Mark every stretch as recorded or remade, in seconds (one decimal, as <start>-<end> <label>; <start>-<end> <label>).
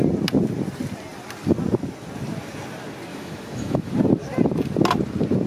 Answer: 0.0-3.1 recorded; 3.1-3.9 remade; 3.9-5.5 recorded